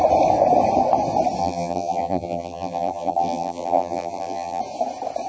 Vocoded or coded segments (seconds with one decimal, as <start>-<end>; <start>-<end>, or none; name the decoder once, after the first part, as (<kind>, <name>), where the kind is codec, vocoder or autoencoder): 1.4-4.6 (vocoder, BigVGAN v2)